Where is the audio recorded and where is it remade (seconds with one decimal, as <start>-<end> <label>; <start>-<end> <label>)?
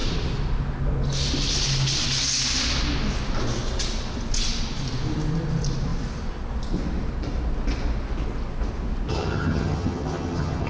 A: 0.0-9.1 recorded; 9.1-10.7 remade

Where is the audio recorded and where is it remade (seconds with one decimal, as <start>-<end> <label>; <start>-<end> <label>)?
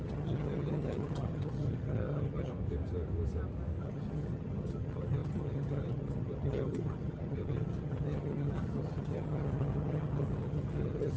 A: 0.0-2.5 remade; 2.5-3.8 recorded; 3.8-11.2 remade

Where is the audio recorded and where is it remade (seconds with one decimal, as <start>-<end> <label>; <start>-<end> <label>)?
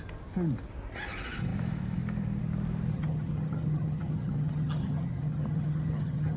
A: 0.0-2.9 recorded; 2.9-6.4 remade